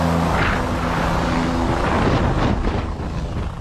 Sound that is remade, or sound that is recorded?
recorded